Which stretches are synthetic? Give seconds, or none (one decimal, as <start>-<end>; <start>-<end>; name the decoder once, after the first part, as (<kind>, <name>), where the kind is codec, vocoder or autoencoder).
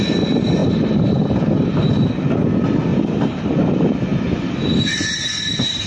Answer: 0.6-1.9 (vocoder, BigVGAN v2)